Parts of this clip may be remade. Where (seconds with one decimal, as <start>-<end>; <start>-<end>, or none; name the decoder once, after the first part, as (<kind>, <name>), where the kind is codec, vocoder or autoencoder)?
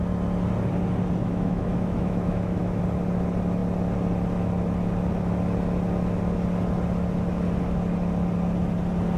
1.2-2.8 (autoencoder, DAC-VAE)